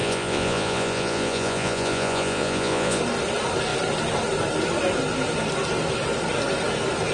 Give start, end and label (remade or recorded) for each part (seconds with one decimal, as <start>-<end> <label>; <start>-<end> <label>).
0.0-3.0 remade; 3.0-7.1 recorded